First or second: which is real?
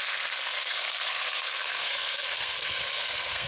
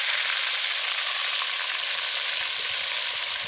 second